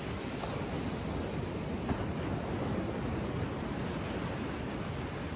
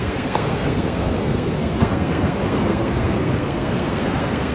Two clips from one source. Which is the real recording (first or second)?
first